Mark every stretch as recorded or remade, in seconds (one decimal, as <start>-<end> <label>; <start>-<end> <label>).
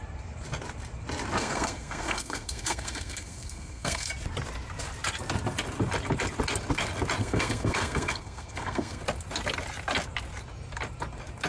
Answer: 0.0-1.4 recorded; 1.4-4.1 remade; 4.1-7.2 recorded; 7.2-9.0 remade; 9.0-11.5 recorded